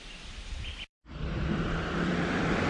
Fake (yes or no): yes